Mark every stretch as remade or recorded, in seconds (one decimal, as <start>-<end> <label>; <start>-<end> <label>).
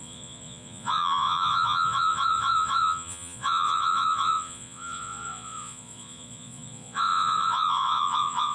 0.0-8.5 remade